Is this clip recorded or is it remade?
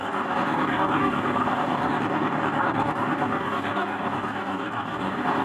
remade